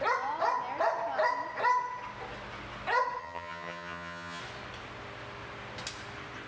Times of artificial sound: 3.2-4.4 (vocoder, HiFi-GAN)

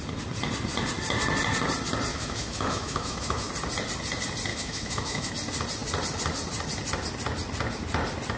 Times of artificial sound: 2.1-3.5 (autoencoder, DAC-VAE); 4.5-5.3

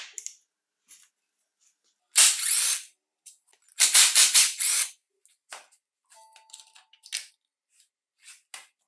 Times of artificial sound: none